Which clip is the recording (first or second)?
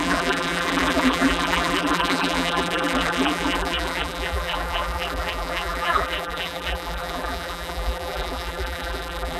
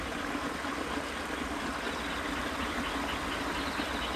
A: second